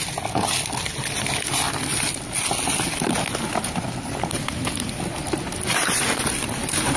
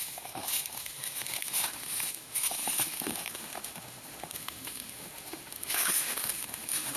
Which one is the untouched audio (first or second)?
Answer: first